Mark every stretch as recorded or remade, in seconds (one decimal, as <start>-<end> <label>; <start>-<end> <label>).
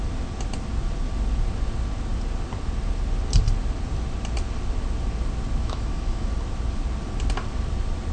0.0-5.6 recorded; 5.6-6.3 remade; 6.3-8.1 recorded